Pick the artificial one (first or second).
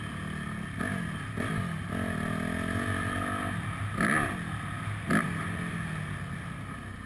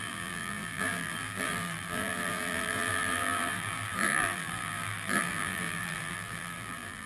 second